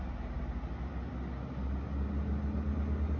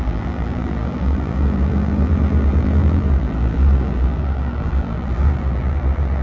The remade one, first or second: second